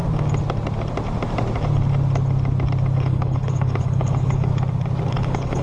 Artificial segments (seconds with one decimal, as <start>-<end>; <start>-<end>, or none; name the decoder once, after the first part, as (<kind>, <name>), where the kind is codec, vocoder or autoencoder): 3.0-4.5 (codec, HILCodec); 5.1-5.6